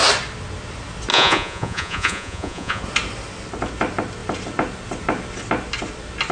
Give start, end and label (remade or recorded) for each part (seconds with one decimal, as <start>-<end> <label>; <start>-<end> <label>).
0.0-1.1 recorded; 1.1-2.8 remade; 2.8-6.3 recorded